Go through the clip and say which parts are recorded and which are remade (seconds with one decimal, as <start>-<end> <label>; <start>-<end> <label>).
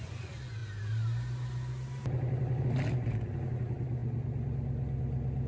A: 0.0-5.5 recorded